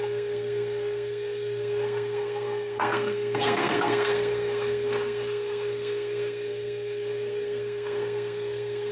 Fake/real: fake